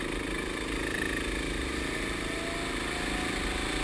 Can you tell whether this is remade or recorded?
recorded